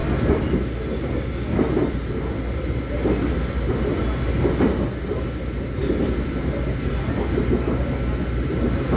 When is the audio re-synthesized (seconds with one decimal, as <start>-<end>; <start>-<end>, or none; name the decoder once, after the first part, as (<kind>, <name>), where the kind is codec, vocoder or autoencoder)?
none